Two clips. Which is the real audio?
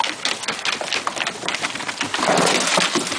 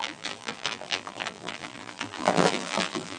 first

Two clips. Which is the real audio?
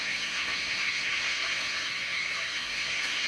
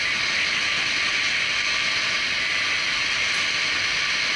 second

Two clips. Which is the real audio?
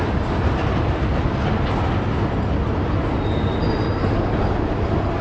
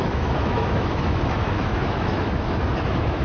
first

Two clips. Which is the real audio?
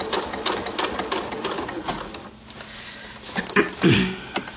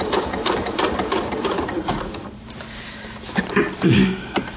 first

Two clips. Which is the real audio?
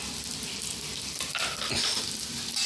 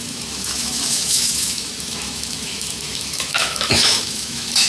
first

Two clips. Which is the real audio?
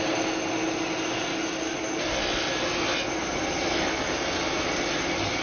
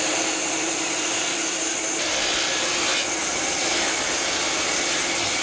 first